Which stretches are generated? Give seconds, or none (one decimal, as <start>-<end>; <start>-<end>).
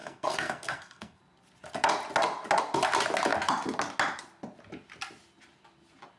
0.0-1.2